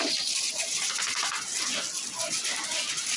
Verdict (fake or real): real